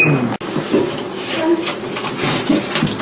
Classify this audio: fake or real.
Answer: real